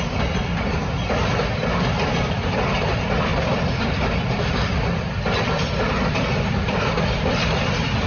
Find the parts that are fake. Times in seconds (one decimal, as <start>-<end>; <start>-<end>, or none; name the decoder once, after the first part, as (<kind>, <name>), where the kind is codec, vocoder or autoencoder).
3.3-4.3 (vocoder, BigVGAN v2)